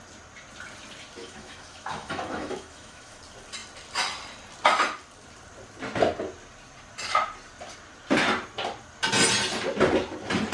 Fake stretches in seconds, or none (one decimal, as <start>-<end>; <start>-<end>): 1.2-3.2